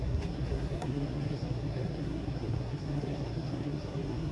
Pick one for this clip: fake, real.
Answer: fake